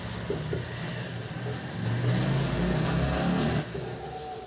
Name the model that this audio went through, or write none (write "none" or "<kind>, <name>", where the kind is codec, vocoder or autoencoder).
none